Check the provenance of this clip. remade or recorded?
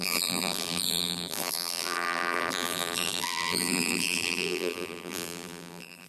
remade